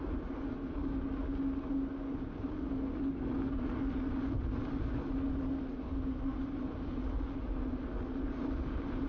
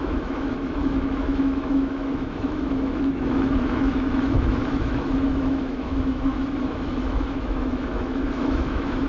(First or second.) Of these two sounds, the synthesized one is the second